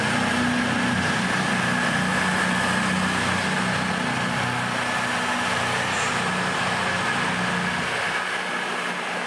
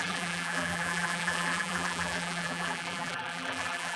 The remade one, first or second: second